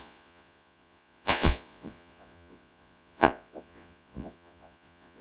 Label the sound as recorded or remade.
remade